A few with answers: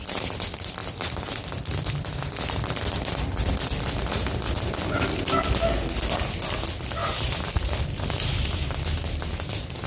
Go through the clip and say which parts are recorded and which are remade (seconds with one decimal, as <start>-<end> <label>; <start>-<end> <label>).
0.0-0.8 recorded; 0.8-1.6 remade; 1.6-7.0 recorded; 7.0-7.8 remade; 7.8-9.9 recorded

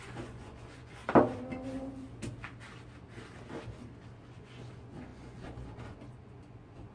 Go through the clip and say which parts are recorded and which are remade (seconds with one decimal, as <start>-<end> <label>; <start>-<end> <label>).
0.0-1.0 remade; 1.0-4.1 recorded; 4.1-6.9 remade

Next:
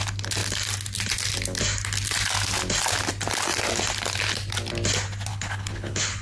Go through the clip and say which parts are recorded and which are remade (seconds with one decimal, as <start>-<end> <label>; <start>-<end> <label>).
0.0-5.3 recorded; 5.3-6.2 remade

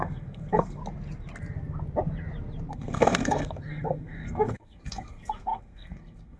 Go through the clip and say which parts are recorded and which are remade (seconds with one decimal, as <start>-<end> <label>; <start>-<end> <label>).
0.0-0.8 remade; 0.8-2.7 recorded; 2.7-6.4 remade

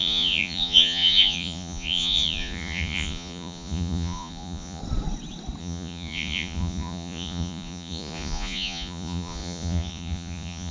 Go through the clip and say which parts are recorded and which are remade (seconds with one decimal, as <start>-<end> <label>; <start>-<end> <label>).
0.0-4.8 remade; 4.8-5.6 recorded; 5.6-10.7 remade

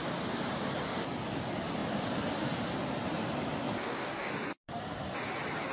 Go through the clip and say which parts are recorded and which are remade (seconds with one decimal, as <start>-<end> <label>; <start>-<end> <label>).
0.0-3.8 recorded; 3.8-4.3 remade; 4.3-5.7 recorded

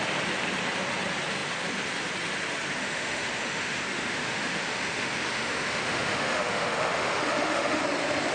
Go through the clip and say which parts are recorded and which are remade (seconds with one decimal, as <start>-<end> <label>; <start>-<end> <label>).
0.0-2.8 recorded; 2.8-7.8 remade; 7.8-8.3 recorded

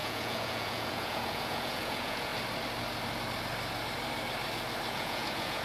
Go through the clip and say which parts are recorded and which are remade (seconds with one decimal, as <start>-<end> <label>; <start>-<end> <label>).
0.0-2.3 remade; 2.3-4.9 recorded; 4.9-5.6 remade